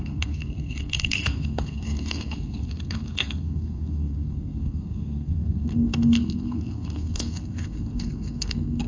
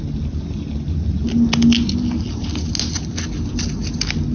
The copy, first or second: first